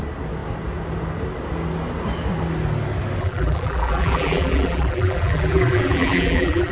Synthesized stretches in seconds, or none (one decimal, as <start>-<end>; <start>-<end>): 3.2-6.7